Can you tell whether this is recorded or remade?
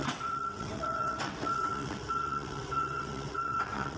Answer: remade